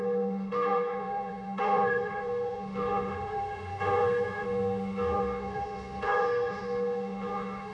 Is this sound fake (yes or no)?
yes